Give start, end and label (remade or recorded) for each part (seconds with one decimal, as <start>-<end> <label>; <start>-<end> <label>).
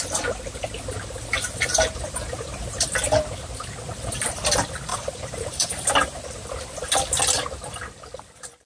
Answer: 0.0-1.3 recorded; 1.3-2.9 remade; 2.9-4.9 recorded; 4.9-6.2 remade; 6.2-8.7 recorded